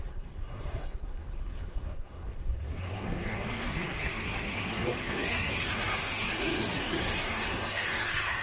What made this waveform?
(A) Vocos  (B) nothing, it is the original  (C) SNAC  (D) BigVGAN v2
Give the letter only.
C